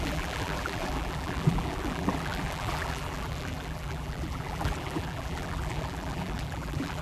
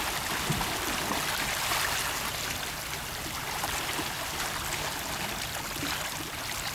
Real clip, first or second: second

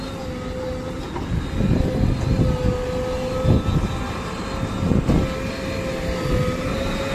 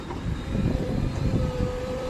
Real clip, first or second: first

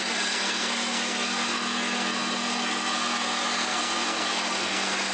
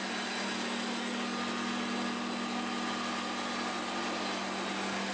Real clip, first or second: second